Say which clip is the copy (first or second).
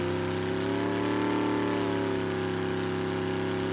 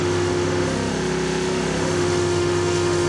second